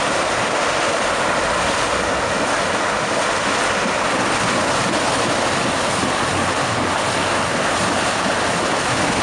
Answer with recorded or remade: recorded